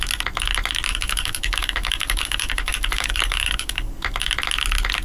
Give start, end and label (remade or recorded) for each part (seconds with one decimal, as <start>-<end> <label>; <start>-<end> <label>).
0.0-0.9 recorded; 0.9-3.9 remade; 3.9-5.0 recorded